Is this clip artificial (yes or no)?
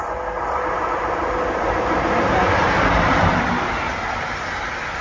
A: no